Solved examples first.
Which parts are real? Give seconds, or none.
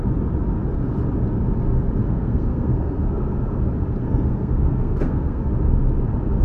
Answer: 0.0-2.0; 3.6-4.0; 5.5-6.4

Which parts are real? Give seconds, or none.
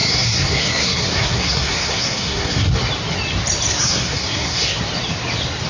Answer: 2.7-3.7; 4.8-5.7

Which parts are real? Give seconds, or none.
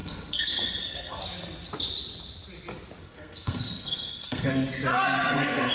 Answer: 1.2-3.0; 4.5-4.9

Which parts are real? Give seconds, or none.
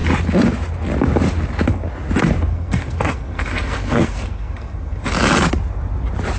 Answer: 0.0-2.5; 5.1-6.4